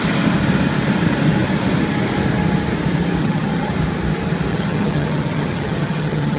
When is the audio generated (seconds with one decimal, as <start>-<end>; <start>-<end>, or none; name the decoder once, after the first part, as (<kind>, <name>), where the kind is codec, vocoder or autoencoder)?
3.2-3.7 (vocoder, HiFi-GAN); 4.5-6.4